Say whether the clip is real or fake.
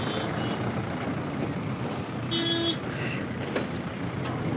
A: real